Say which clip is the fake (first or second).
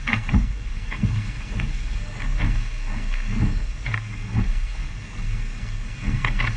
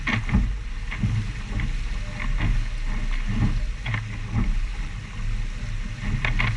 first